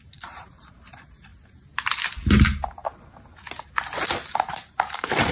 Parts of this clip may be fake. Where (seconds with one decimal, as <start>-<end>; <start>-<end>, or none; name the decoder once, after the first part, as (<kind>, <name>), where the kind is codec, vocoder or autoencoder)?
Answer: 0.0-1.3 (vocoder, BigVGAN v2); 2.4-2.8; 4.2-5.3

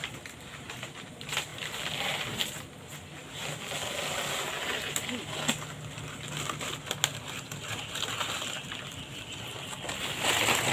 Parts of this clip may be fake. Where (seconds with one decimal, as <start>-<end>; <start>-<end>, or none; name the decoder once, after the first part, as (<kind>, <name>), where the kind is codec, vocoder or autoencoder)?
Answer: 1.5-2.6 (vocoder, BigVGAN v2)

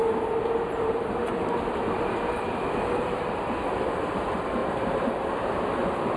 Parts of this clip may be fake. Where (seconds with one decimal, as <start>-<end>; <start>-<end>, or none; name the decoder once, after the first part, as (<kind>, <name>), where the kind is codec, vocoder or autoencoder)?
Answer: 0.0-1.2 (vocoder, BigVGAN v2); 3.7-6.2

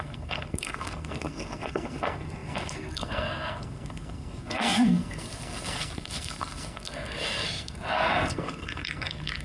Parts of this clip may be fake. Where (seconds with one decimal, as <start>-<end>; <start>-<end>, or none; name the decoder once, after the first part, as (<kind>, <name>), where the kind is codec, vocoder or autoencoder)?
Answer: 0.0-9.4 (codec, SNAC)

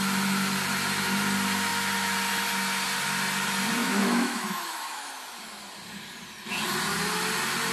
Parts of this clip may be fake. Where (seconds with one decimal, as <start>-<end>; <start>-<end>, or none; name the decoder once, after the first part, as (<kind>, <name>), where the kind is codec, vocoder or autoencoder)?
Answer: 3.8-5.1 (autoencoder, DAC-VAE)

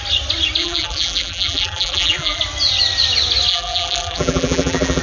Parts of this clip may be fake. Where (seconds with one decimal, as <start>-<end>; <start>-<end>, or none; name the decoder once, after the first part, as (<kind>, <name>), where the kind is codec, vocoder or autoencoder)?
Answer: 0.6-2.4 (vocoder, BigVGAN v2); 3.5-5.0